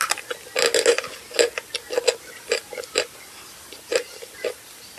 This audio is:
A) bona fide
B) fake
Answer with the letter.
A